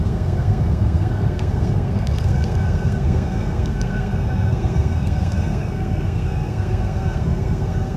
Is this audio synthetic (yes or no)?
yes